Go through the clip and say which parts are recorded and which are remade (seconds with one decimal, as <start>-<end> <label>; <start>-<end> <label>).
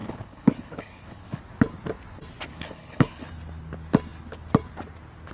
0.0-1.4 remade; 1.4-2.5 recorded; 2.5-3.3 remade; 3.3-5.3 recorded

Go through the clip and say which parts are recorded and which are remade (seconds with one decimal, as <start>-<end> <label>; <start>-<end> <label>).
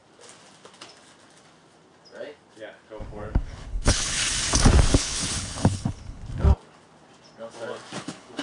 0.0-3.4 recorded; 3.4-4.2 remade; 4.2-4.9 recorded; 4.9-6.2 remade; 6.2-8.0 recorded; 8.0-8.4 remade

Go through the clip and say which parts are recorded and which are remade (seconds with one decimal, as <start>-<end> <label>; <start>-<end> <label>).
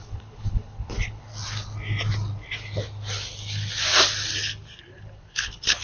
0.0-1.3 remade; 1.3-4.8 recorded; 4.8-5.8 remade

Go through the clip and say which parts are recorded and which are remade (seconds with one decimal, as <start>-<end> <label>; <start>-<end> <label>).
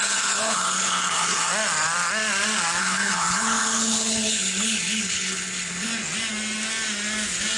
0.0-1.5 remade; 1.5-2.8 recorded; 2.8-5.9 remade; 5.9-7.6 recorded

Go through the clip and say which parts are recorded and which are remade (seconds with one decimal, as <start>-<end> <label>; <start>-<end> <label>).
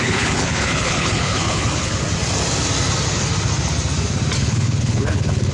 0.0-1.9 remade; 1.9-4.4 recorded; 4.4-5.5 remade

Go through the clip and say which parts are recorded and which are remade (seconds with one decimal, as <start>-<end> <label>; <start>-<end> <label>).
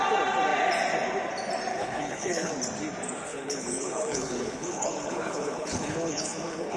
0.0-1.7 recorded; 1.7-2.5 remade; 2.5-3.3 recorded; 3.3-6.8 remade